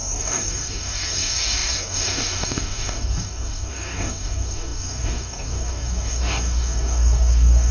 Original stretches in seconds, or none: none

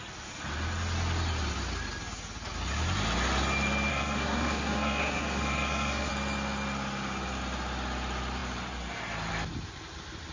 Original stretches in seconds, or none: 0.0-3.9; 6.1-10.3

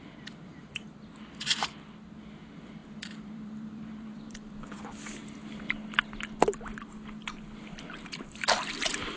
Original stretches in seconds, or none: 0.0-2.8; 4.8-9.2

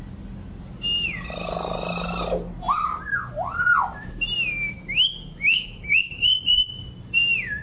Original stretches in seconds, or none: 0.0-4.5; 6.4-7.6